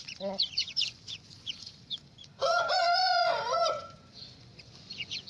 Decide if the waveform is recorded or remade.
remade